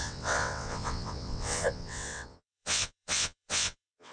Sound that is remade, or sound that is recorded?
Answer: remade